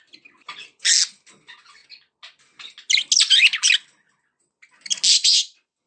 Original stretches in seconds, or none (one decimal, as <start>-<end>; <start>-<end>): 0.0-5.1